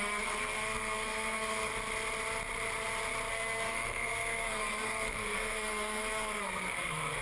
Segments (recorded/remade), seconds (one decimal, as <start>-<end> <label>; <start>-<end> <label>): 0.0-1.7 remade; 1.7-3.3 recorded; 3.3-7.2 remade